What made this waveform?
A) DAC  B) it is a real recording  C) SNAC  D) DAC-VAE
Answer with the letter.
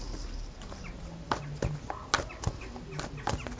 B